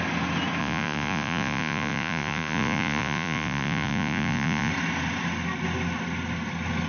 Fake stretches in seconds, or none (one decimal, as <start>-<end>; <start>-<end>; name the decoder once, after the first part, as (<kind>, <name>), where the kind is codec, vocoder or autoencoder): 0.6-4.7 (vocoder, Vocos)